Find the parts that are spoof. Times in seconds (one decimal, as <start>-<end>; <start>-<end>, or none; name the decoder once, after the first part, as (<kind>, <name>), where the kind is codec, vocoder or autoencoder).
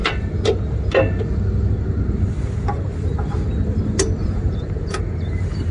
4.2-5.0 (vocoder, Vocos)